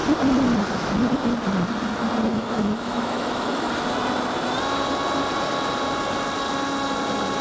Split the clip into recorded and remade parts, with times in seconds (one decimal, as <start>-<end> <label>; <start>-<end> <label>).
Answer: 0.0-2.3 recorded; 2.3-3.7 remade; 3.7-7.4 recorded